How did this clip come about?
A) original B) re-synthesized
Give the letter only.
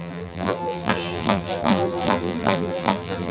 B